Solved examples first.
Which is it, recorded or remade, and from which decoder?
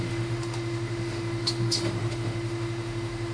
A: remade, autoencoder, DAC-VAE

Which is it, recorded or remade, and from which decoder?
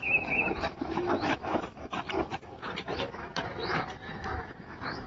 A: remade, autoencoder, DAC-VAE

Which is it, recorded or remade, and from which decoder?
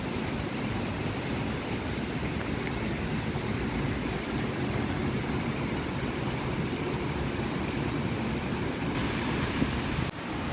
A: recorded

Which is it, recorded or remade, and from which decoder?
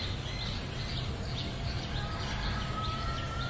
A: recorded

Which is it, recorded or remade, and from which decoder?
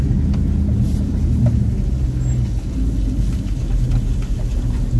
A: recorded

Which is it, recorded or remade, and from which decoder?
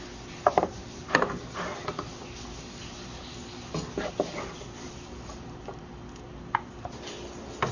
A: recorded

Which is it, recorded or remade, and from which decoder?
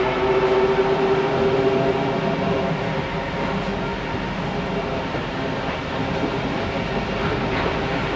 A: recorded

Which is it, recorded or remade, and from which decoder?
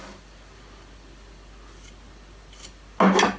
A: recorded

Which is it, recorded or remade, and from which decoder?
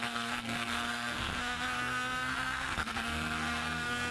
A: remade, codec, SNAC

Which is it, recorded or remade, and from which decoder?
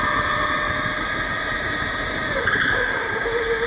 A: recorded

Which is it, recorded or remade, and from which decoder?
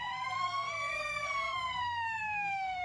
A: remade, codec, SNAC